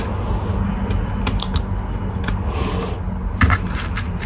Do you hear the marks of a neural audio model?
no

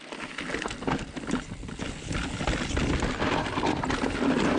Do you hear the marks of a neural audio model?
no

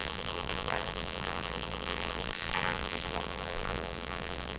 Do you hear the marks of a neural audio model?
yes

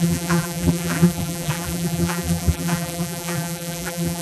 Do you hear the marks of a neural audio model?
yes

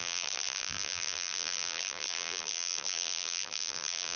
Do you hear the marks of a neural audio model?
yes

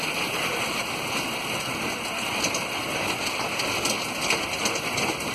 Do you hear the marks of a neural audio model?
no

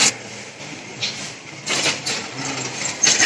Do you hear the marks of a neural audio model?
yes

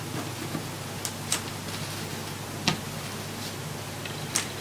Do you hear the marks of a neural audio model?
no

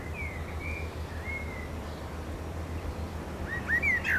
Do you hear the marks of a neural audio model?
no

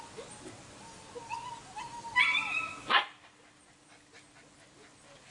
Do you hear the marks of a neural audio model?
no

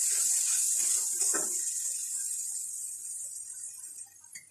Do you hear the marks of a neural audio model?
no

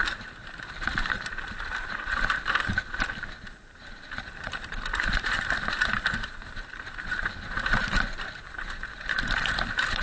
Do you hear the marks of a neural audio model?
yes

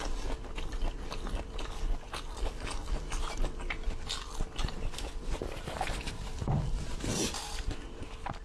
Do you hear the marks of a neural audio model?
no